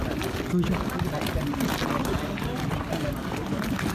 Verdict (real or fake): real